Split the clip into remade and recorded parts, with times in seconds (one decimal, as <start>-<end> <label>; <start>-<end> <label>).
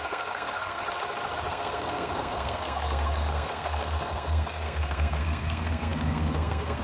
0.0-0.8 remade; 0.8-1.5 recorded; 1.5-6.8 remade